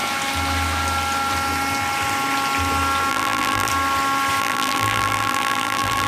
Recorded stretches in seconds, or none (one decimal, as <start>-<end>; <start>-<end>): 0.0-3.1; 3.7-4.4